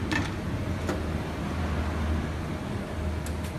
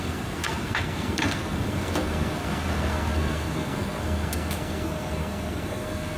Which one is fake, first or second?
second